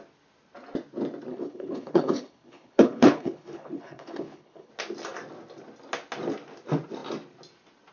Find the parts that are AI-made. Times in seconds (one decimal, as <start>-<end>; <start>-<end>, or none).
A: 1.3-4.7